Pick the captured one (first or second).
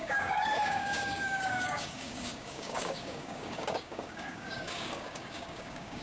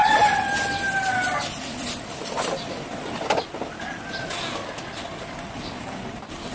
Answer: second